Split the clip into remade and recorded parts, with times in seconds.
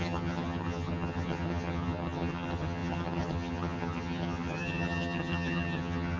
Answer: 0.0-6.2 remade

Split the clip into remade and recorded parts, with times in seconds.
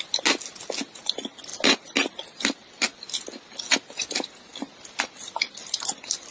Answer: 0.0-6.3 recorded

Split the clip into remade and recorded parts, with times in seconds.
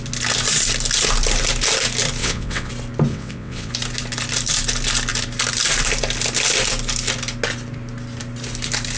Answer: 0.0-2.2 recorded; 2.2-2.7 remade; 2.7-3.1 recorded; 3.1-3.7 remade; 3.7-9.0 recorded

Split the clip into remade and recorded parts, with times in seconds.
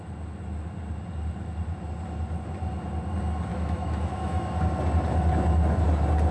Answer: 0.0-3.5 recorded; 3.5-4.6 remade; 4.6-6.3 recorded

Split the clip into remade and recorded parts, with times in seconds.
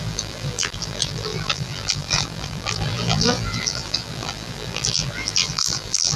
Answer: 0.0-6.2 remade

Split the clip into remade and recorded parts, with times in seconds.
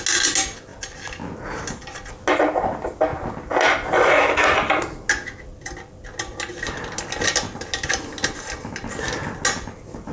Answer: 0.0-10.1 recorded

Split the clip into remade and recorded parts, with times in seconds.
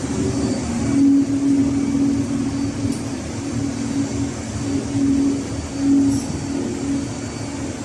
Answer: 0.0-7.8 recorded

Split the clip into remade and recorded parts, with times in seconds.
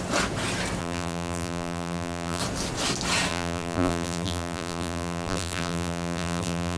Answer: 0.0-0.8 recorded; 0.8-2.4 remade; 2.4-3.3 recorded; 3.3-6.8 remade